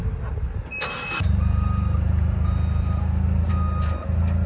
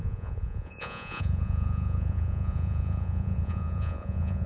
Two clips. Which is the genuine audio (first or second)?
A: first